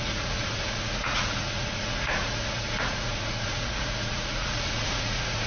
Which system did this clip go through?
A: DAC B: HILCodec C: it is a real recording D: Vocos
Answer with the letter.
D